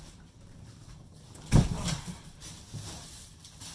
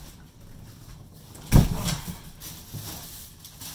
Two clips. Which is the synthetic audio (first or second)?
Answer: first